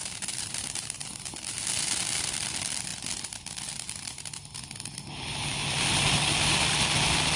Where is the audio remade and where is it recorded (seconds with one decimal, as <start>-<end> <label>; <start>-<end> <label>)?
0.0-7.4 recorded